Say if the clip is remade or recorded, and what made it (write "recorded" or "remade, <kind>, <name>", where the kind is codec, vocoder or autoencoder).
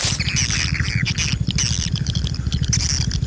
recorded